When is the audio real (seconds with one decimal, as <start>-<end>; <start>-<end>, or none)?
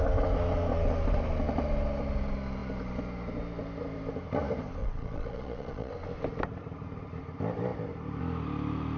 0.0-4.8; 5.9-9.0